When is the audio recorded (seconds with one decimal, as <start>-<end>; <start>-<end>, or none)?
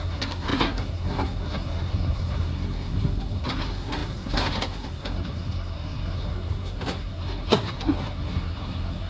none